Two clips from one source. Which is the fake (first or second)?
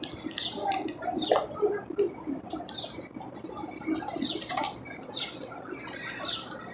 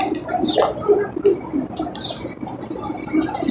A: first